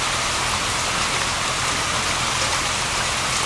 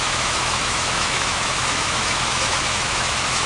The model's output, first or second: second